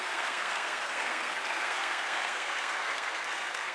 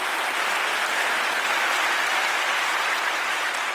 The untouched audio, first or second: second